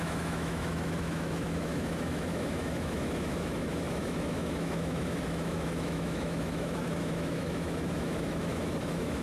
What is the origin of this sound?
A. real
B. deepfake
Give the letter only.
B